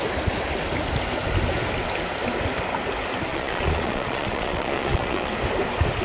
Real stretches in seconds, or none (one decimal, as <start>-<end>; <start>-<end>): 0.0-3.3; 5.3-6.0